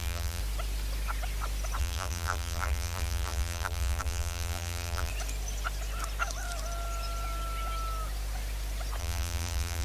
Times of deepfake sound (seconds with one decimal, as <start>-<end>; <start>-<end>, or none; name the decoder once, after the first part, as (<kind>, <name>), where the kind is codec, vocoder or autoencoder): 0.0-0.4 (vocoder, BigVGAN v2); 1.8-5.1; 9.0-9.8